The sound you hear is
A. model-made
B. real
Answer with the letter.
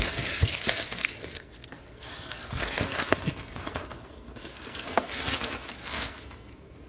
A